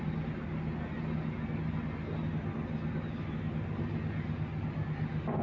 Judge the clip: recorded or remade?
recorded